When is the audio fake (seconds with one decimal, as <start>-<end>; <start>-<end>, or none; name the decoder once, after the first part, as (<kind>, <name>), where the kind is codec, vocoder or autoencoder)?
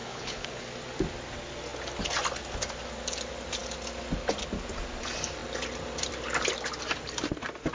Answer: 0.0-0.6 (codec, HILCodec)